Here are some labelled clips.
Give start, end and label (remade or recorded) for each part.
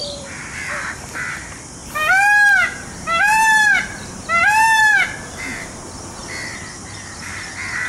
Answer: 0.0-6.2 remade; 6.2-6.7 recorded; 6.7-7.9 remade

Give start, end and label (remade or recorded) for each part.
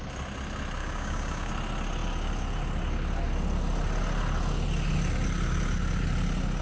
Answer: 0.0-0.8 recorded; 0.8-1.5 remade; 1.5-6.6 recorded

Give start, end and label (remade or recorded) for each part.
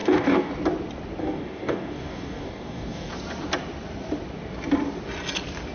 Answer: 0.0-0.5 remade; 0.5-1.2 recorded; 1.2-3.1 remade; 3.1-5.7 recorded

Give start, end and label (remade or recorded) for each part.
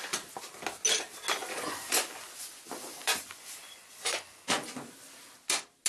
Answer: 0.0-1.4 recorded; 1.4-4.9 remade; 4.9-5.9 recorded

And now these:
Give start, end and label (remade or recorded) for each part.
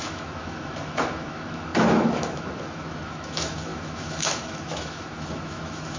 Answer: 0.0-6.0 remade